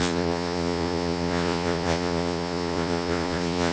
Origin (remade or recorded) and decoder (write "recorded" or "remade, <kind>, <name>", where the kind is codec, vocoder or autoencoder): remade, vocoder, Vocos